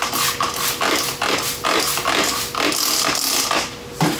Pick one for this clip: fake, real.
real